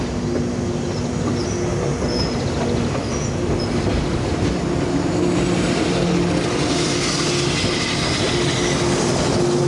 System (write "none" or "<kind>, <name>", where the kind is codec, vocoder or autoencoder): none